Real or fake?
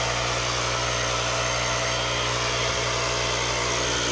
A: real